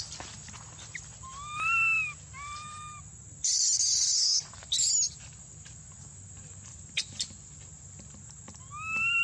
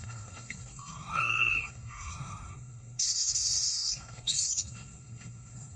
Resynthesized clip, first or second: second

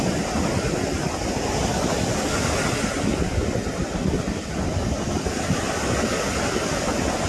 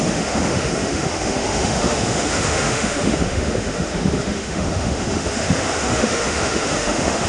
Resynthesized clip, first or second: second